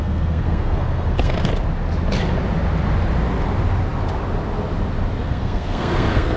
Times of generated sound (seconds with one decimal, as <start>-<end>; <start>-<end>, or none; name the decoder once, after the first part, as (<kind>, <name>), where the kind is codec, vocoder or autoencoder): 0.0-1.5 (codec, SNAC); 5.2-6.4